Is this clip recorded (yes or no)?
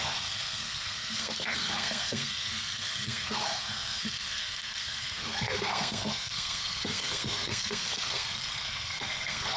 no